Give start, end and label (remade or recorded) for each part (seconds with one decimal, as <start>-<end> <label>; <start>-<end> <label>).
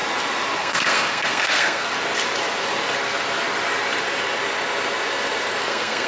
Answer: 0.0-0.6 recorded; 0.6-1.9 remade; 1.9-5.6 recorded; 5.6-6.1 remade